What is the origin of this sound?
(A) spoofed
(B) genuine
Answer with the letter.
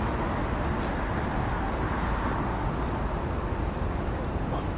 B